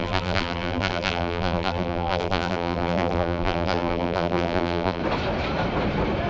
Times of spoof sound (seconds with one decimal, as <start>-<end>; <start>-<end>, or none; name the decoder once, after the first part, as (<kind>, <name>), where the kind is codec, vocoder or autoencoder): 0.0-5.0 (vocoder, BigVGAN v2)

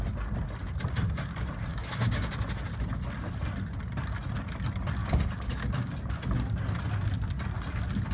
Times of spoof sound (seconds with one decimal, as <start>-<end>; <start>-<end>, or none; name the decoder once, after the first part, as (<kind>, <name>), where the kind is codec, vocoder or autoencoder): 1.7-2.3 (codec, DAC); 5.0-5.9

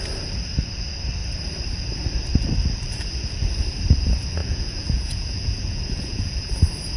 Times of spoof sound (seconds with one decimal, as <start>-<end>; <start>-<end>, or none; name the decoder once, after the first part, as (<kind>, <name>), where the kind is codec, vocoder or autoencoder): 4.4-6.5 (vocoder, Vocos)

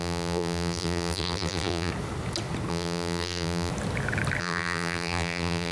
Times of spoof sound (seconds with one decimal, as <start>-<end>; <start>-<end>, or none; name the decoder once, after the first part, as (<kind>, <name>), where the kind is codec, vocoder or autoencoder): 0.0-1.9 (vocoder, BigVGAN v2); 2.7-3.7; 4.4-5.7

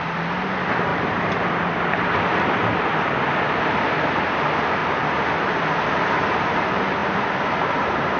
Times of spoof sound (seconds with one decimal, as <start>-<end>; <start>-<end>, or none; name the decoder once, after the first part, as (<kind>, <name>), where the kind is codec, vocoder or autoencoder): 0.9-2.5 (vocoder, BigVGAN v2)

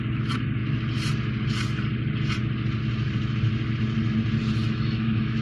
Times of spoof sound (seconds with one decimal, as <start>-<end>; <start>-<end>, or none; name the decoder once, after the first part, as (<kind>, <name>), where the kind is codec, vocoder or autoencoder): 4.6-5.4 (autoencoder, DAC-VAE)

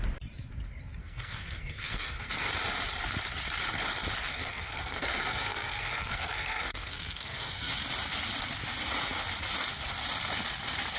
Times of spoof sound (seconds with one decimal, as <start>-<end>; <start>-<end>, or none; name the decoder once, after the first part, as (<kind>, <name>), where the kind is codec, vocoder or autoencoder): 1.0-2.5 (codec, SNAC); 4.3-7.7